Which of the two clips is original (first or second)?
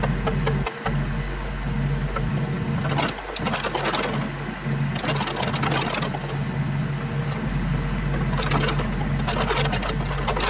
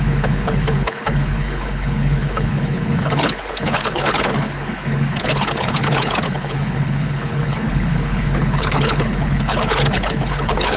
first